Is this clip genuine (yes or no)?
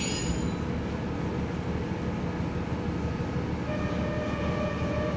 yes